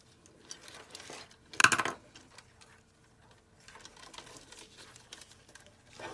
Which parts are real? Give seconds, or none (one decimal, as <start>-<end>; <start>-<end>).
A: 0.0-6.1